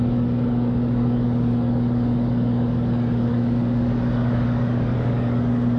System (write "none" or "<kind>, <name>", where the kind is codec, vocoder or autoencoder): codec, DAC